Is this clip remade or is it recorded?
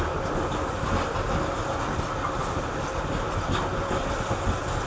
recorded